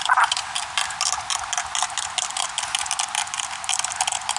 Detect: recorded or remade recorded